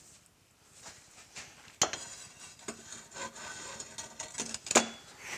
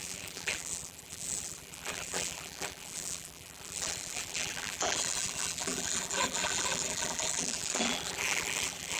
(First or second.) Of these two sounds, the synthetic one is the second